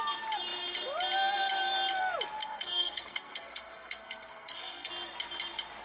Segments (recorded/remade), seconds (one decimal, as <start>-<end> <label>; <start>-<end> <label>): 0.0-2.4 recorded; 2.4-4.9 remade; 4.9-5.8 recorded